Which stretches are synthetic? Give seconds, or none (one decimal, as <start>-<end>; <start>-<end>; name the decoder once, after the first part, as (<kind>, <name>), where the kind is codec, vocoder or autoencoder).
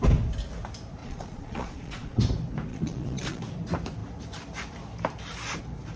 1.0-2.2 (vocoder, Vocos); 2.7-3.4